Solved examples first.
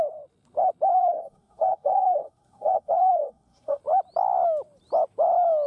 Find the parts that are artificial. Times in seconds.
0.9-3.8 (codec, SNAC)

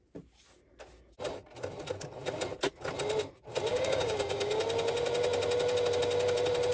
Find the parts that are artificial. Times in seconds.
3.7-4.6 (codec, DAC)